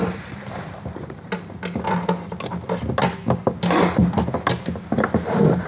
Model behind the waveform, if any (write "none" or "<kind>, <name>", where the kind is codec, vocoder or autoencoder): none